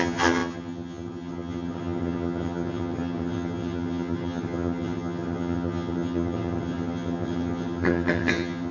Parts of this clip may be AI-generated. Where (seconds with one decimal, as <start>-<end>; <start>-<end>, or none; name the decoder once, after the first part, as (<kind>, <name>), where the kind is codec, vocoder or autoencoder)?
0.0-8.7 (vocoder, HiFi-GAN)